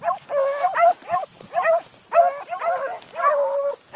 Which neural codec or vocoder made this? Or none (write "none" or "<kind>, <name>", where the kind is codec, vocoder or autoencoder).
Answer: none